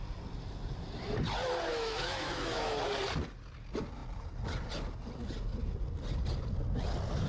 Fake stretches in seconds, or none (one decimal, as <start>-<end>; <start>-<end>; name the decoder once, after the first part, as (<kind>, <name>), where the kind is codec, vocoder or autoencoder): 1.7-2.8 (autoencoder, DAC-VAE)